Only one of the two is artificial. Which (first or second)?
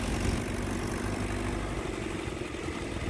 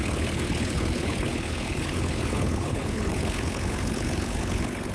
second